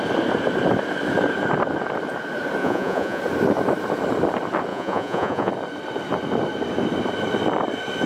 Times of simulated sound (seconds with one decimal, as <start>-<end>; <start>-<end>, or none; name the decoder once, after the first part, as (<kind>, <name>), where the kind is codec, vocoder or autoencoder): 2.6-3.2 (vocoder, Vocos); 4.7-5.5

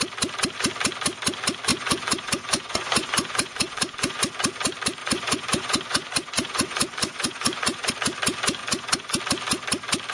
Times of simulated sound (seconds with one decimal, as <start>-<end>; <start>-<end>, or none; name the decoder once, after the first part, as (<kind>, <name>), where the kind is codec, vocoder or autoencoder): 1.7-4.2 (vocoder, Vocos); 5.0-7.9; 8.6-9.2